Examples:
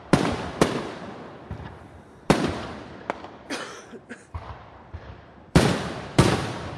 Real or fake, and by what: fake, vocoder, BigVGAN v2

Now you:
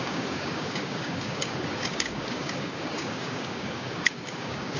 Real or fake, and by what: fake, codec, DAC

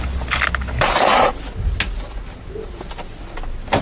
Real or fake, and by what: real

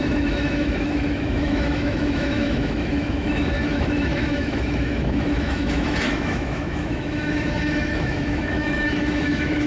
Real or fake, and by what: fake, autoencoder, DAC-VAE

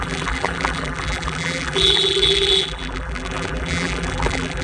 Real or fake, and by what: fake, vocoder, BigVGAN v2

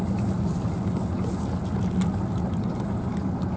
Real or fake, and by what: real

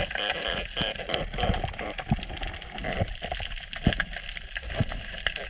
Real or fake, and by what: real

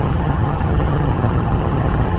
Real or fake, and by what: fake, vocoder, HiFi-GAN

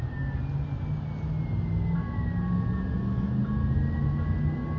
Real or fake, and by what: real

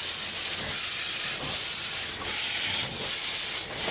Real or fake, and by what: real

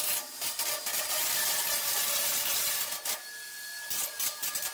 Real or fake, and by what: real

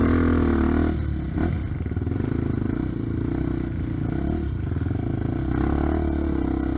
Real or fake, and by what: real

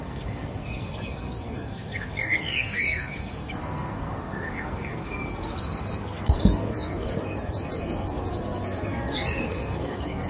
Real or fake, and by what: fake, codec, SNAC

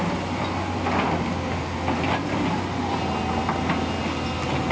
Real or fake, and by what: real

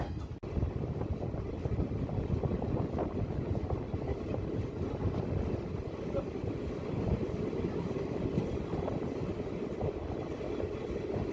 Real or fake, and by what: real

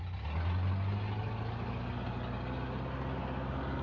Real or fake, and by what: real